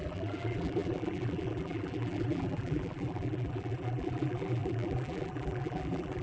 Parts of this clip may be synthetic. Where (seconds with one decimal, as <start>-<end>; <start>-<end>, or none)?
0.0-6.2